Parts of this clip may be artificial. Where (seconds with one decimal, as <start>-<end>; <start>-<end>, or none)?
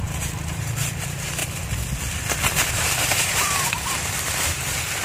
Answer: 0.0-1.4; 2.7-5.0